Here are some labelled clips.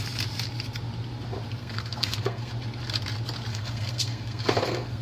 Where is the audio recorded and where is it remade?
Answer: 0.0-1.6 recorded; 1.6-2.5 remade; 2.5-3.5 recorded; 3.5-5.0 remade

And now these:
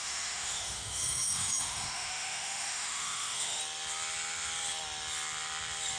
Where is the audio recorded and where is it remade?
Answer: 0.0-3.6 remade; 3.6-6.0 recorded

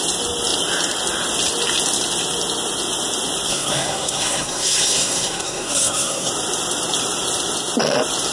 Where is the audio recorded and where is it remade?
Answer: 0.0-3.5 recorded; 3.5-6.3 remade; 6.3-8.3 recorded

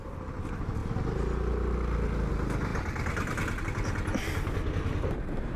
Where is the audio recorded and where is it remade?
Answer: 0.0-5.6 recorded

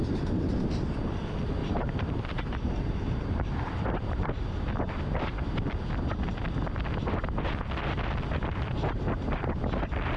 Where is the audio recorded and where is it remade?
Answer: 0.0-1.6 recorded; 1.6-5.7 remade; 5.7-10.2 recorded

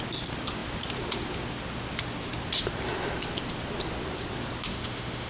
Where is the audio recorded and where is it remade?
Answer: 0.0-4.7 recorded; 4.7-5.3 remade